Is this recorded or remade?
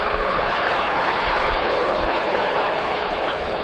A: remade